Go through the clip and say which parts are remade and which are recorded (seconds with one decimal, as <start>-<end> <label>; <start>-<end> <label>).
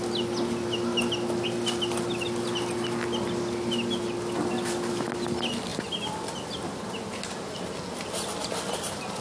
0.0-9.2 recorded